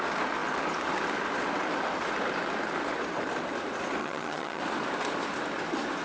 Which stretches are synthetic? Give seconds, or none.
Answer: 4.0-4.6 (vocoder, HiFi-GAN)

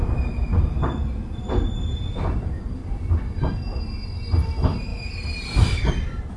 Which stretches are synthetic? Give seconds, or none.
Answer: 0.4-2.0 (vocoder, BigVGAN v2); 2.8-3.5; 4.9-5.9

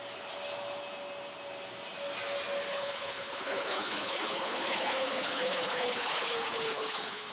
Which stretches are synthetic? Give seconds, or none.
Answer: 2.7-7.3 (codec, HILCodec)

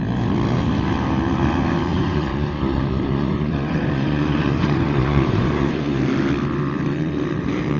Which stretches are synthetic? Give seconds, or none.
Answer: 1.9-6.0 (vocoder, Vocos)

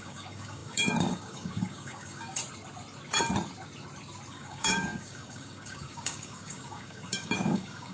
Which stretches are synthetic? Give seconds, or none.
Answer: 0.0-2.4 (codec, DAC); 4.3-7.9

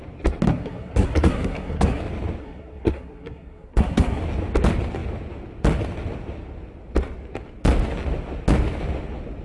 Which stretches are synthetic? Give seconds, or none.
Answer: 0.5-2.0 (codec, SNAC); 2.4-4.2